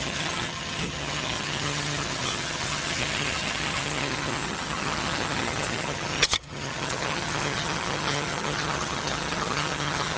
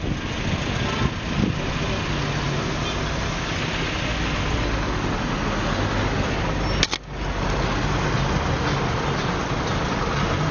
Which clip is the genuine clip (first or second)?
second